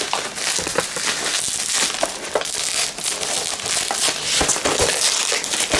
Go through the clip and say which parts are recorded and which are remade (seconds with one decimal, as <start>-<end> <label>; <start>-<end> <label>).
0.0-5.8 recorded